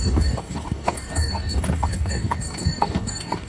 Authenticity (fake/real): fake